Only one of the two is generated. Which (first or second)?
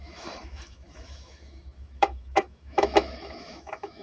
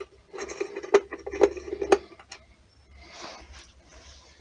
first